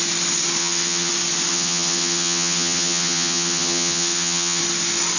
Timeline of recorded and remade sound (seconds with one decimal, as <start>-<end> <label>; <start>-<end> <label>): 0.0-0.6 recorded; 0.6-1.1 remade; 1.1-1.5 recorded; 1.5-4.6 remade; 4.6-5.2 recorded